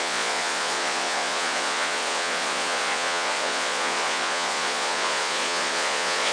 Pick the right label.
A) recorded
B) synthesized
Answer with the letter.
B